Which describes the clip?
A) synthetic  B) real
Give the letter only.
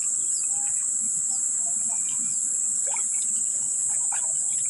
B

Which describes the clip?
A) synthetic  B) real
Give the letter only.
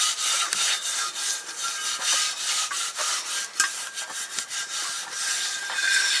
B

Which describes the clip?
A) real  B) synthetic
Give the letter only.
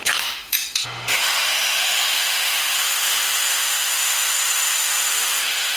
B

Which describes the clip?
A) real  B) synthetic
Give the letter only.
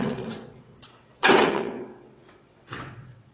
B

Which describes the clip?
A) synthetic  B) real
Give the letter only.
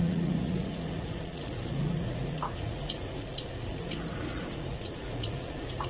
A